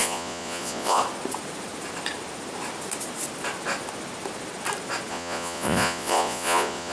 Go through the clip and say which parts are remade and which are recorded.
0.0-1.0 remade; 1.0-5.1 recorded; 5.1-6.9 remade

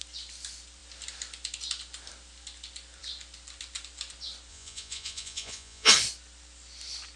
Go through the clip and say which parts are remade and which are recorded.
0.0-4.5 recorded; 4.5-5.9 remade; 5.9-7.2 recorded

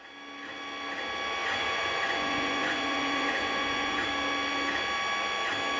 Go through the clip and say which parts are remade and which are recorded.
0.0-1.4 recorded; 1.4-4.0 remade; 4.0-5.8 recorded